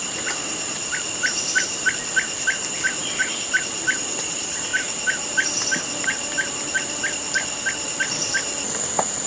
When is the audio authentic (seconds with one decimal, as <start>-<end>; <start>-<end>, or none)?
4.7-6.9